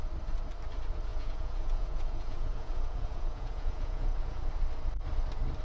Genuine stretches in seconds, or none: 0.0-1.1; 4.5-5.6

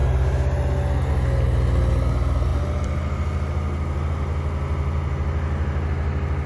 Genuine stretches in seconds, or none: 0.0-6.5